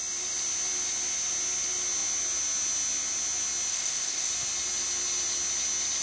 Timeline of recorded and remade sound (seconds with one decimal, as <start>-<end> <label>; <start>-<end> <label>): 0.0-3.7 recorded; 3.7-4.3 remade; 4.3-6.0 recorded